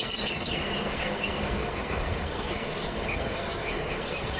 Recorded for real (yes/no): no